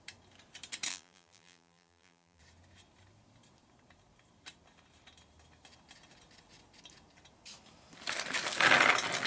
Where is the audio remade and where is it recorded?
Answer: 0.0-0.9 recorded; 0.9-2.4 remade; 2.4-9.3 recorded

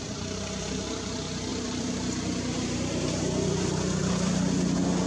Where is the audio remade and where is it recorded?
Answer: 0.0-1.5 recorded; 1.5-3.2 remade; 3.2-5.1 recorded

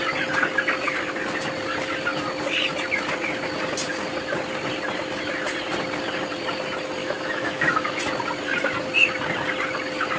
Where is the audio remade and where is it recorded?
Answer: 0.0-7.0 recorded; 7.0-8.0 remade; 8.0-10.2 recorded

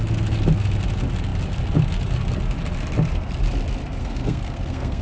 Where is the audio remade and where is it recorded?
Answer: 0.0-4.0 recorded; 4.0-5.0 remade